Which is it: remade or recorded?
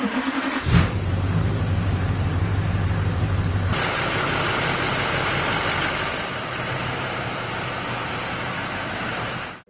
remade